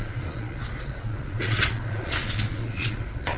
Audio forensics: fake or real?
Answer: fake